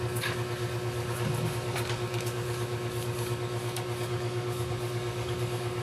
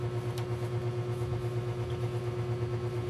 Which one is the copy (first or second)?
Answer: first